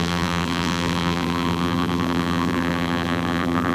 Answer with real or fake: fake